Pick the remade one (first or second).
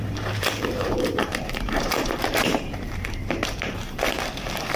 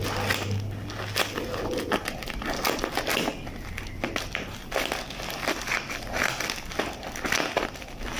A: first